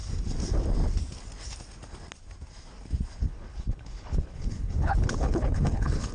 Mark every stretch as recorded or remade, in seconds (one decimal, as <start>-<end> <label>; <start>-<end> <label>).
0.0-3.2 recorded; 3.2-6.1 remade